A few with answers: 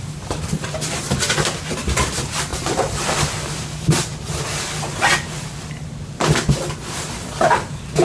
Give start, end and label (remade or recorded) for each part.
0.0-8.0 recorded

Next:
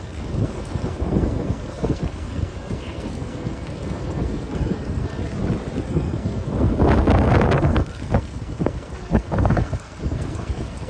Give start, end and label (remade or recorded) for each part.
0.0-5.2 remade; 5.2-5.9 recorded; 5.9-10.9 remade

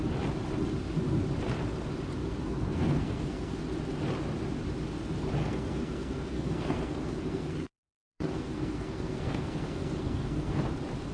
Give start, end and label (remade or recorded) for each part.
0.0-2.2 recorded; 2.2-3.6 remade; 3.6-5.4 recorded; 5.4-10.6 remade; 10.6-11.1 recorded

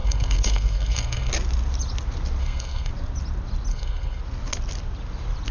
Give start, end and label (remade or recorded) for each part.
0.0-1.3 remade; 1.3-2.4 recorded; 2.4-2.9 remade; 2.9-3.7 recorded; 3.7-4.2 remade; 4.2-5.5 recorded

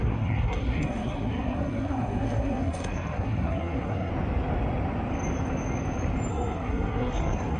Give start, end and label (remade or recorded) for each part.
0.0-4.1 remade; 4.1-6.3 recorded; 6.3-7.6 remade

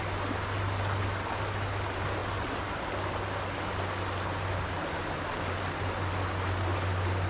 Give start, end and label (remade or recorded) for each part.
0.0-7.3 recorded

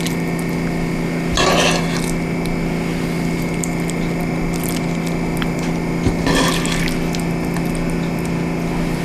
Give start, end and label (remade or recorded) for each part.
0.0-9.0 recorded

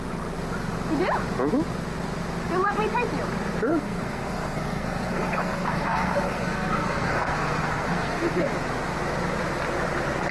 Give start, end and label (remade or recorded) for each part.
0.0-3.7 recorded; 3.7-8.5 remade; 8.5-10.3 recorded